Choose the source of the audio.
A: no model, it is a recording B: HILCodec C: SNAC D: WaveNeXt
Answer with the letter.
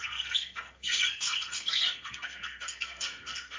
C